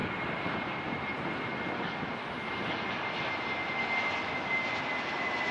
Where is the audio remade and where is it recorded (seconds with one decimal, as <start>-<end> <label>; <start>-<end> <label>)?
0.0-5.5 recorded